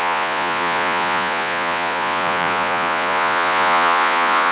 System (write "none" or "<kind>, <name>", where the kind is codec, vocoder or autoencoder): vocoder, Vocos